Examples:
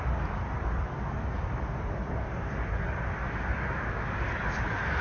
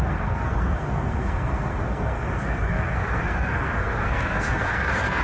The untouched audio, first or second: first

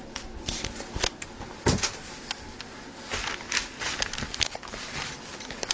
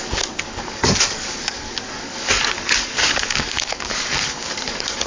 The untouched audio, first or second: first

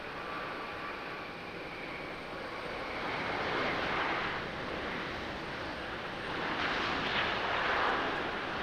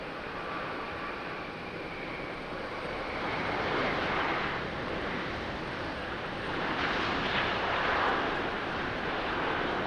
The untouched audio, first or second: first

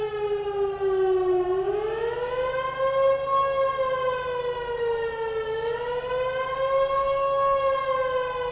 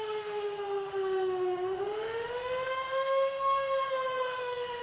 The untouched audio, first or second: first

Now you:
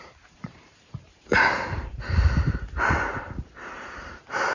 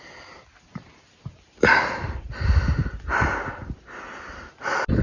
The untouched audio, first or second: second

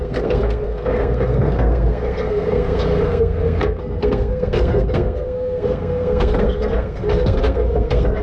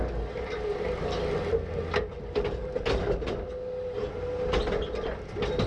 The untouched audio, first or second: second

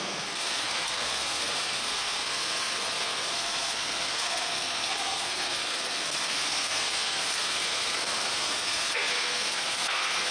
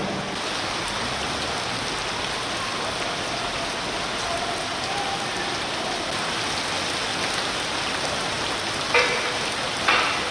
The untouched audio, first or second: second